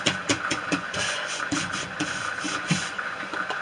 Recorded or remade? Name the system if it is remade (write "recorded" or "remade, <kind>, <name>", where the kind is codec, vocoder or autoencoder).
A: remade, vocoder, Vocos